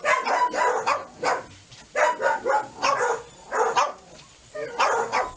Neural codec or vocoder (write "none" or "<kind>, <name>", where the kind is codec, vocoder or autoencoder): none